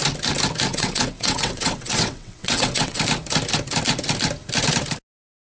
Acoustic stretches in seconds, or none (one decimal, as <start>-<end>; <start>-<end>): 0.0-0.7; 3.0-5.5